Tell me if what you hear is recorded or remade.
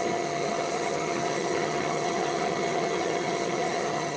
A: remade